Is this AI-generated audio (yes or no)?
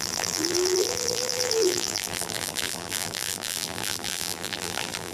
yes